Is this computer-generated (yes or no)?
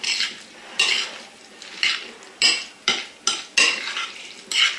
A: no